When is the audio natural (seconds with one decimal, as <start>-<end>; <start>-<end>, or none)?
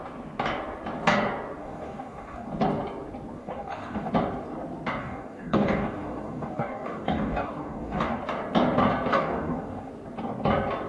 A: 0.0-1.6; 2.5-3.4; 4.1-5.0; 8.2-9.1; 9.9-10.9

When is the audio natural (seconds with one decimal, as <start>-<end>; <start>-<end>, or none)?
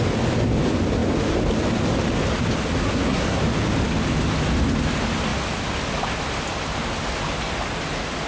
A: 0.0-2.8; 3.4-8.3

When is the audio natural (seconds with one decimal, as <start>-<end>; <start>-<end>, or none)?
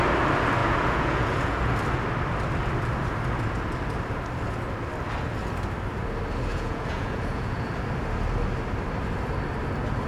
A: 0.0-0.6; 1.7-6.5; 7.7-10.1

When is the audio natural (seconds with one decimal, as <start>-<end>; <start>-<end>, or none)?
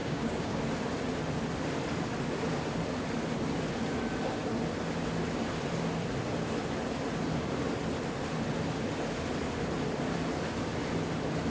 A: 0.6-11.5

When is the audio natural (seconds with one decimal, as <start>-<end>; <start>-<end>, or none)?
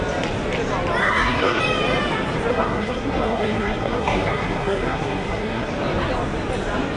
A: 0.0-1.0; 1.6-2.5; 5.7-7.0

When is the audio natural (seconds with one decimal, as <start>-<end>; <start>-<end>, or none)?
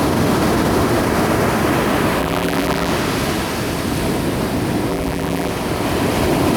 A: 0.0-2.2; 2.9-4.9; 5.5-6.6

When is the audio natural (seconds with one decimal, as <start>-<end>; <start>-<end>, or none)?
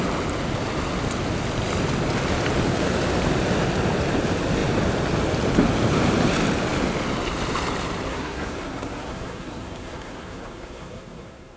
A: 0.0-8.1